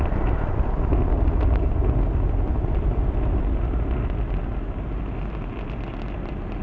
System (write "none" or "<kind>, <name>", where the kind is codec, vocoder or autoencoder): none